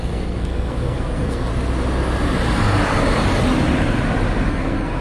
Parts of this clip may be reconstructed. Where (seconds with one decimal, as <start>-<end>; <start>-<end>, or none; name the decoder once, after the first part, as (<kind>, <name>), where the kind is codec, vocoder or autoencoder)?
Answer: 0.0-1.5 (codec, SNAC); 4.5-5.0